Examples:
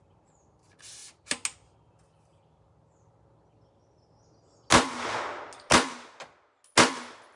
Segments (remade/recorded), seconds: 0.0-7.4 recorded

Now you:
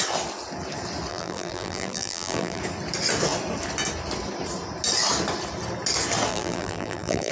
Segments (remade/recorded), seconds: 0.0-1.1 recorded; 1.1-2.6 remade; 2.6-6.3 recorded; 6.3-7.3 remade

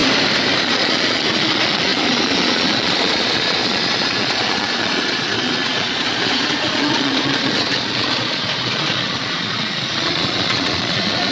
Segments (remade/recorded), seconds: 0.0-0.6 recorded; 0.6-11.3 remade

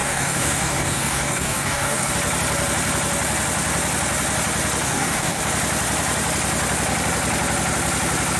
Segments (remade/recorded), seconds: 0.0-2.1 remade; 2.1-4.8 recorded; 4.8-5.4 remade; 5.4-8.4 recorded

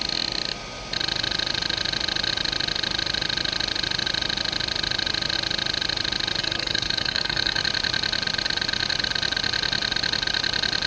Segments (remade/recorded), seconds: 0.0-6.4 recorded; 6.4-7.6 remade; 7.6-10.9 recorded

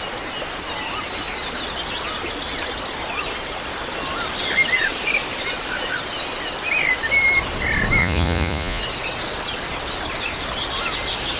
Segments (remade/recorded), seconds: 0.0-8.0 recorded; 8.0-8.8 remade; 8.8-11.4 recorded